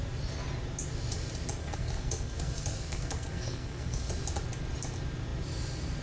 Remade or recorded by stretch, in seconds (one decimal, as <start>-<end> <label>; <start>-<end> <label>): 0.0-1.6 recorded; 1.6-4.1 remade; 4.1-6.0 recorded